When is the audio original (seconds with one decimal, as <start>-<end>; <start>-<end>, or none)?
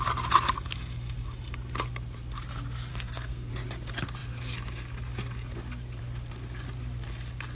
0.0-2.9; 3.5-7.5